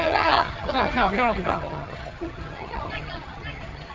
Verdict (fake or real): fake